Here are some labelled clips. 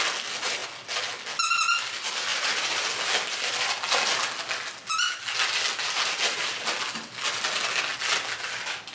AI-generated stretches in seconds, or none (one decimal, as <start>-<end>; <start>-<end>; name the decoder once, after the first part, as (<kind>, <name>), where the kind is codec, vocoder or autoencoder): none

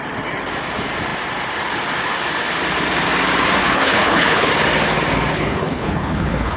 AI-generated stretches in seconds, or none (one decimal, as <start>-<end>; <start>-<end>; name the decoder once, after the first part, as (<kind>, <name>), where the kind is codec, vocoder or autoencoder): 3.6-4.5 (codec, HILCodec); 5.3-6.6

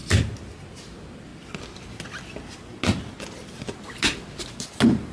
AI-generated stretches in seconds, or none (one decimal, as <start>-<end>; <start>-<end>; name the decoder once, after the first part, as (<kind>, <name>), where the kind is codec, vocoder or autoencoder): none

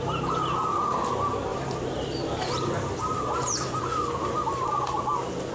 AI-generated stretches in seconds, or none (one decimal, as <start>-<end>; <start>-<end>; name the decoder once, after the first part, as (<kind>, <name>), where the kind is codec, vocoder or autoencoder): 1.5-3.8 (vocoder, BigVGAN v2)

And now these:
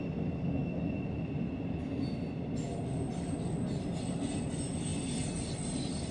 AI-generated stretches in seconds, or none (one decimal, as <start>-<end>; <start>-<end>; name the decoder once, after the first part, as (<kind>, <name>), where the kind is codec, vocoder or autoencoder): none

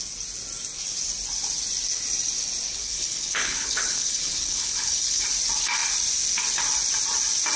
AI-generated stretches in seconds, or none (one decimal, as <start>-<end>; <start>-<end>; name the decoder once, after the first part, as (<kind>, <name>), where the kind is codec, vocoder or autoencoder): 2.8-5.2 (codec, HILCodec)

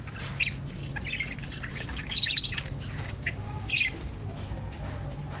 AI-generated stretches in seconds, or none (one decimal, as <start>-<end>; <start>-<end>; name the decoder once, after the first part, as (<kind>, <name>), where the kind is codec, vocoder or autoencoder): 1.7-3.7 (codec, DAC)

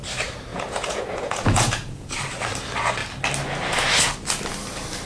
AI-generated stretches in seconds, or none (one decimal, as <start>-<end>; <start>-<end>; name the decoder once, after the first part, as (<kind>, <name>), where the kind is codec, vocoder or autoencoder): 0.5-2.2 (vocoder, Vocos)